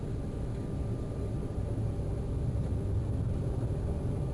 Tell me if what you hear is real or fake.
real